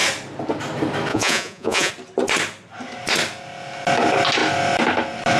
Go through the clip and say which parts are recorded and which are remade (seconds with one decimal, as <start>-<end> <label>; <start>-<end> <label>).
0.0-1.1 recorded; 1.1-1.9 remade; 1.9-5.4 recorded